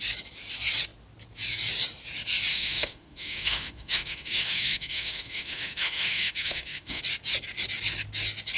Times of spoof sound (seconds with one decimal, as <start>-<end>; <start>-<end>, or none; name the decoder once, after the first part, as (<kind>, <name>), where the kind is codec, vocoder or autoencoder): 2.5-7.0 (autoencoder, DAC-VAE)

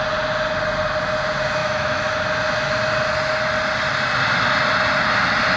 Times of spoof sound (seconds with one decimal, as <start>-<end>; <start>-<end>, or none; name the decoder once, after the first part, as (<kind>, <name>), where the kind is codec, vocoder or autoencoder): 1.6-2.1 (autoencoder, DAC-VAE)

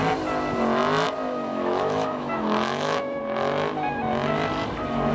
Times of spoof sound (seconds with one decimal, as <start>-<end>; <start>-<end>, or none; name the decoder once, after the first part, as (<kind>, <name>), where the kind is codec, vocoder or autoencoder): 1.5-3.2 (autoencoder, DAC-VAE)

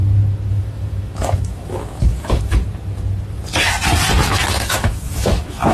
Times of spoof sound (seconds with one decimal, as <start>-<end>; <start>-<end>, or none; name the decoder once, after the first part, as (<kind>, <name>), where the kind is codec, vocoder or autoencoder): 0.5-2.6 (autoencoder, DAC-VAE); 4.5-5.7

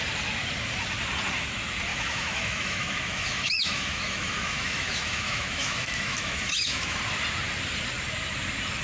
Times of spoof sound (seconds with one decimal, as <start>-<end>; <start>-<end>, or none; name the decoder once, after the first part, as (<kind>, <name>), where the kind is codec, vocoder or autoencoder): 1.9-7.0 (autoencoder, DAC-VAE)

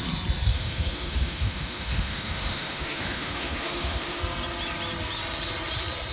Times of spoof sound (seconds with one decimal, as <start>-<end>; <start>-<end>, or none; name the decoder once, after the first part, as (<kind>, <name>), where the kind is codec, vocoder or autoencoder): 0.5-4.2 (autoencoder, DAC-VAE)

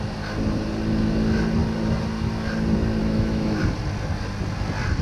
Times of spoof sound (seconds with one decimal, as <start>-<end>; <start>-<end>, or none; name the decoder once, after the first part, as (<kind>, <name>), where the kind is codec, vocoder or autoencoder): 3.0-3.6 (autoencoder, DAC-VAE)

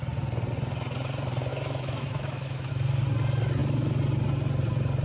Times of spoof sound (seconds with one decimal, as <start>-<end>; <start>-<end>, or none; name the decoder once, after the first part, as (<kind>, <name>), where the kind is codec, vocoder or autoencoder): 1.5-2.7 (autoencoder, DAC-VAE)